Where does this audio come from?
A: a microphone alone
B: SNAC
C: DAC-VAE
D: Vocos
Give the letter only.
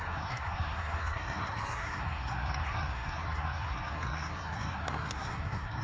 B